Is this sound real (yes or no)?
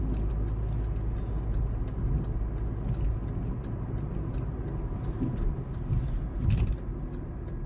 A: yes